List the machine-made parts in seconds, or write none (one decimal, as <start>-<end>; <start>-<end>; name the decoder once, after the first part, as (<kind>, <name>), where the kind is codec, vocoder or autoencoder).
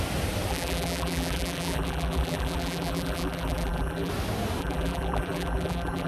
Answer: 0.5-4.1 (vocoder, BigVGAN v2); 4.6-6.1